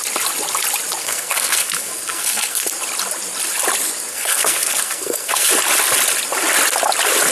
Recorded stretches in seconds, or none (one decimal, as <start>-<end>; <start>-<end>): 0.0-1.0; 2.7-4.1; 5.5-7.3